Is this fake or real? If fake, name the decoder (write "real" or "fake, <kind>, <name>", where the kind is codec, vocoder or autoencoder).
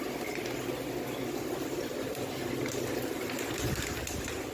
real